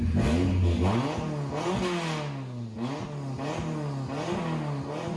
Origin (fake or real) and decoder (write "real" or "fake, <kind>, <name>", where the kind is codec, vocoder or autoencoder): real